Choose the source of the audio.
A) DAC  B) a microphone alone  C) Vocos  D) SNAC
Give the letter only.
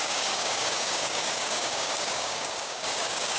A